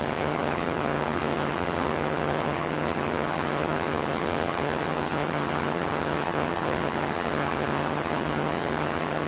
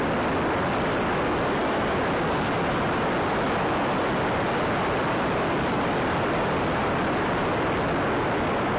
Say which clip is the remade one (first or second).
first